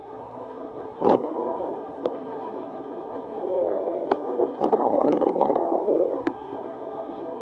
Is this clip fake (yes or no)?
yes